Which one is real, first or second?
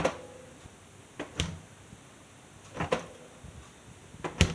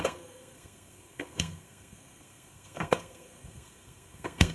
first